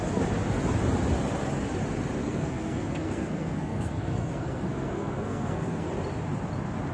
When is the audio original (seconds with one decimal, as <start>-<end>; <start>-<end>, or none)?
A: 0.0-2.2; 5.9-6.9